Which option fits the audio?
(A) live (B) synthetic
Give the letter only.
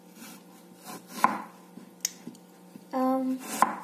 A